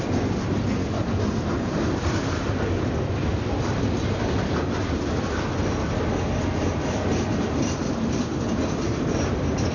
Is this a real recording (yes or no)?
yes